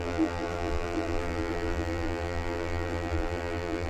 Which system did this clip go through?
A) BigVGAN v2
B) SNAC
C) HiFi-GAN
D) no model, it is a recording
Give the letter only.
A